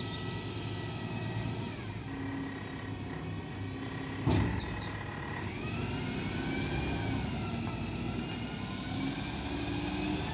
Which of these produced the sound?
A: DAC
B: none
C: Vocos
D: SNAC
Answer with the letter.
B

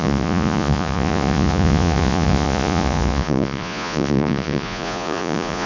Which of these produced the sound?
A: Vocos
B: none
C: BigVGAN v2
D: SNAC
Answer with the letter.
A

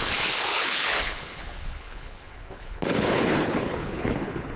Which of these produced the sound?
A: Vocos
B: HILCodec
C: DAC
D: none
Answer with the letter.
B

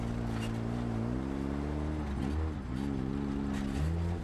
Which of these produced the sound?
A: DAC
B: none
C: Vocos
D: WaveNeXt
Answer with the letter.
B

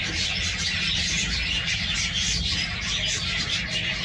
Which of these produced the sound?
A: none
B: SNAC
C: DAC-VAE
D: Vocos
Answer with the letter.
A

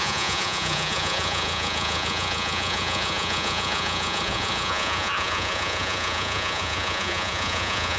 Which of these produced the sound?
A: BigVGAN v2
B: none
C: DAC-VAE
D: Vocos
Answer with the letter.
D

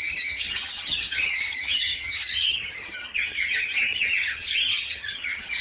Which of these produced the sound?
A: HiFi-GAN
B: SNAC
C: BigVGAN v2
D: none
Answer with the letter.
A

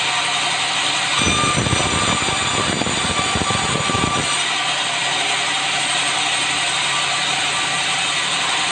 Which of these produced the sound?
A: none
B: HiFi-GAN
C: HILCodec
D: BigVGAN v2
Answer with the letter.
A